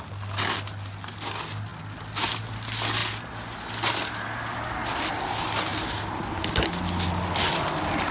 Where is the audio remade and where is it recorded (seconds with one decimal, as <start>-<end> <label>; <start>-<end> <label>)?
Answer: 0.0-8.1 recorded